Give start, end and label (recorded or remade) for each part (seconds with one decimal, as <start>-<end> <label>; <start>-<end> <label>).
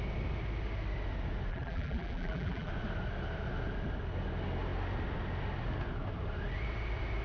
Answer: 0.0-1.5 recorded; 1.5-2.7 remade; 2.7-7.2 recorded